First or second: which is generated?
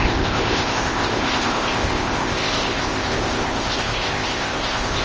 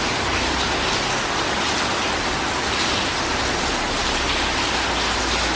first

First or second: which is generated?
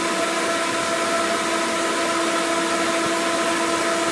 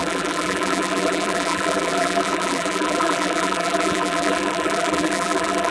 second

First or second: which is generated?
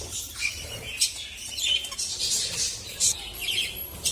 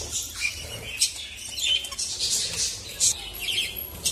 first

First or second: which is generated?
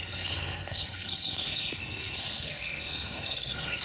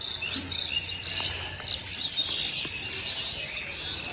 first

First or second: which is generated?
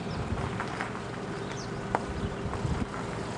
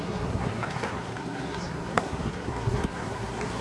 second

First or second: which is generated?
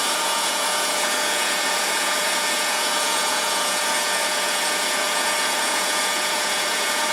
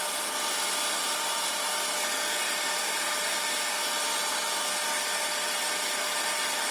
first